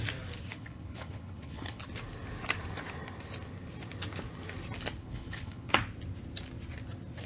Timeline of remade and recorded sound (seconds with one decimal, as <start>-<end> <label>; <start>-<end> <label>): 0.0-0.5 recorded; 0.5-1.8 remade; 1.8-5.0 recorded; 5.0-5.7 remade; 5.7-7.3 recorded